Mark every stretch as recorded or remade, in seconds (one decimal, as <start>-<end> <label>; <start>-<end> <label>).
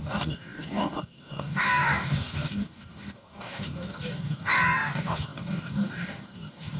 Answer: 0.0-6.8 remade